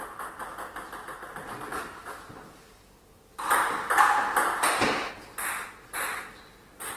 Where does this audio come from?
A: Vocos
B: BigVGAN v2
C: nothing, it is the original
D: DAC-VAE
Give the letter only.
C